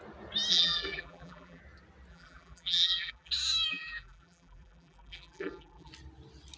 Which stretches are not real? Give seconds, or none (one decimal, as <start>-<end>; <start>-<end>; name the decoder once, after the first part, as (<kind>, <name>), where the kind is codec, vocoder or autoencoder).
0.5-1.6 (vocoder, BigVGAN v2); 2.1-3.3; 3.7-5.9